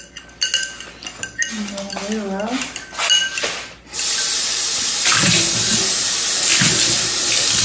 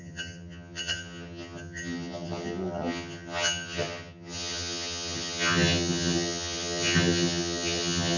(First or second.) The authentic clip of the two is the first